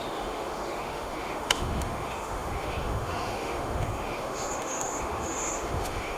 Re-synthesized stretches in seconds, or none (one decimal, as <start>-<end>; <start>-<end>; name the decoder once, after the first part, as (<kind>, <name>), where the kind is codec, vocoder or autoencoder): 0.0-6.2 (autoencoder, DAC-VAE)